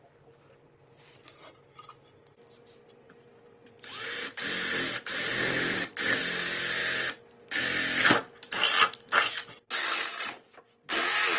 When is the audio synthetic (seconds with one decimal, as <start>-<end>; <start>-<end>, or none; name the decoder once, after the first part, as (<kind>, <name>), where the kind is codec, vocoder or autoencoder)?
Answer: 0.0-6.8 (vocoder, BigVGAN v2); 10.2-11.4